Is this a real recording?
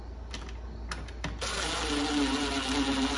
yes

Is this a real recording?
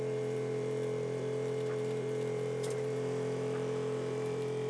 no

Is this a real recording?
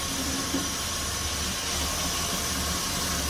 yes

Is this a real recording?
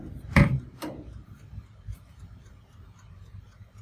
no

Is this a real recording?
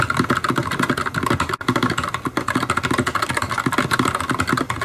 yes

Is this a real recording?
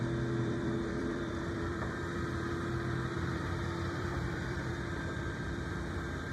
no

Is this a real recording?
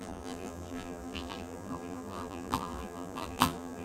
no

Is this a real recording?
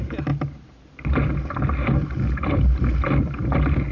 yes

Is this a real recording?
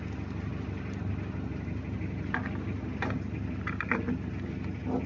yes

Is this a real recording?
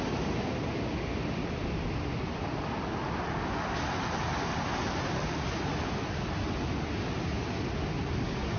yes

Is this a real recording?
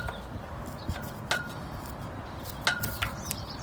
yes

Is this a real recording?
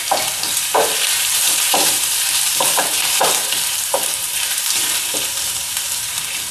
no